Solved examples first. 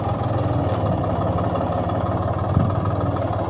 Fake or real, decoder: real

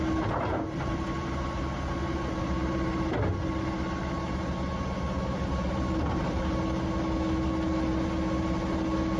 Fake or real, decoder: real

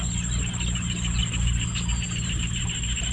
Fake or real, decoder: real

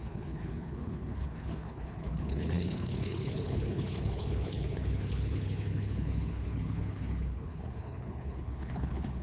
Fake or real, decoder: fake, codec, HILCodec